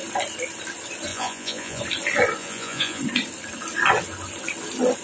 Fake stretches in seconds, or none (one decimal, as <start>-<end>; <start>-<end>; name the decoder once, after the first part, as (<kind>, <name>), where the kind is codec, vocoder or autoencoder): 1.1-1.8 (vocoder, Vocos); 2.4-3.0